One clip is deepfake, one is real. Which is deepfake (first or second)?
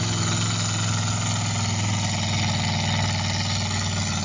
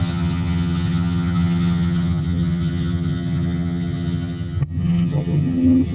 second